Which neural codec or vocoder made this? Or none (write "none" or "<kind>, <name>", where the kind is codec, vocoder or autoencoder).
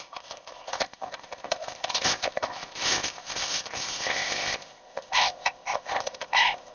codec, ZipCodec